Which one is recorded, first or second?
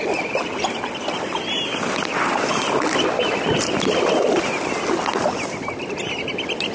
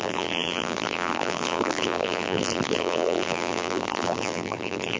first